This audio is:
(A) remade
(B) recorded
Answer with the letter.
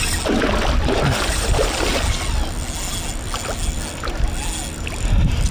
B